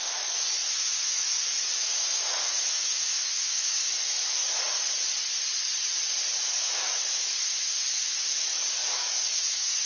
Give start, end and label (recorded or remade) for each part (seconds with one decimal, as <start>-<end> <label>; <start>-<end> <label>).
0.0-4.4 remade; 4.4-6.6 recorded; 6.6-9.9 remade

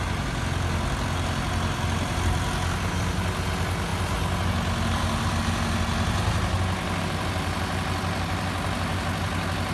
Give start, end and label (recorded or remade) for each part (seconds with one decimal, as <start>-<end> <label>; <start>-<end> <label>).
0.0-9.7 recorded

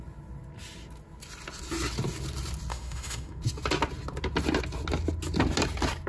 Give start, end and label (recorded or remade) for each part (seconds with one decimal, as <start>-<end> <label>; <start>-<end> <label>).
0.0-2.7 recorded; 2.7-3.4 remade; 3.4-6.1 recorded

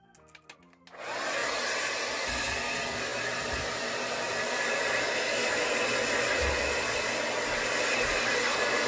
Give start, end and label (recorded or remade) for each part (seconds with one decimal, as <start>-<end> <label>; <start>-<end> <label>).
0.0-8.9 recorded